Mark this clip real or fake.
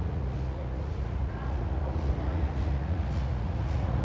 fake